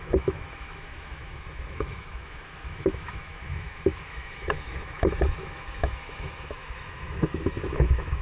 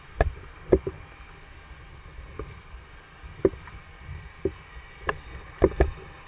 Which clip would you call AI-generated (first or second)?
first